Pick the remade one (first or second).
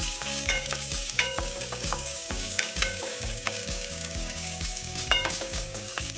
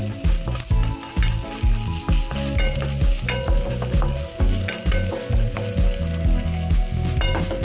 first